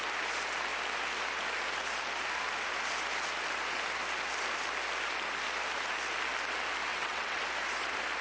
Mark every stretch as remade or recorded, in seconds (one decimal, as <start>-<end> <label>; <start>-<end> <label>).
0.0-6.9 recorded; 6.9-7.4 remade; 7.4-8.2 recorded